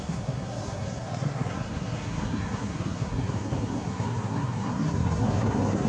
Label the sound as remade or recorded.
remade